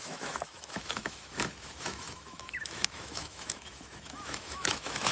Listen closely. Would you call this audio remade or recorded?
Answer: remade